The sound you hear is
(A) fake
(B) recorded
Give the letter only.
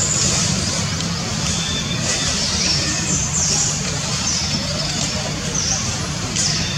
B